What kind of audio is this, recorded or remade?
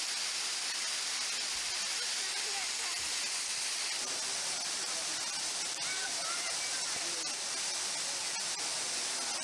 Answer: recorded